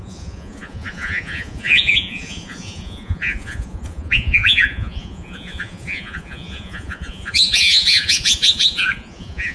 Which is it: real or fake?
fake